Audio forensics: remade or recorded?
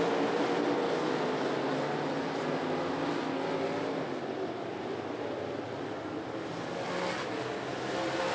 recorded